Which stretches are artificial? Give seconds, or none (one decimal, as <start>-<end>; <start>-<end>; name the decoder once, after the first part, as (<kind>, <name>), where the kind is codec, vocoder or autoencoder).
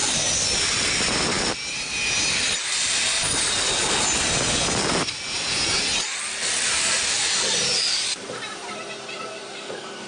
2.6-3.8 (vocoder, BigVGAN v2); 7.5-10.1